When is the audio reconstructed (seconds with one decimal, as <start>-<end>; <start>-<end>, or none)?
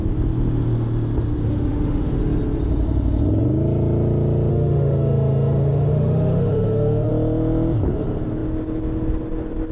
1.4-2.2; 4.5-7.1